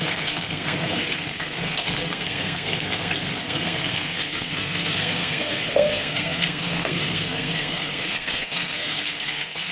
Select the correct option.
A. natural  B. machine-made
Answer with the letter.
B